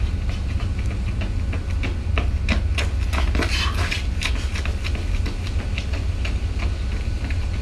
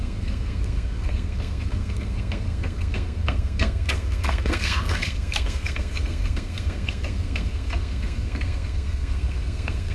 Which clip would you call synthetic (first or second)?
second